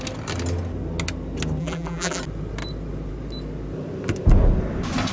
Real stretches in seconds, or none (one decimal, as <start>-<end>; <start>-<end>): 0.0-1.6; 2.2-5.1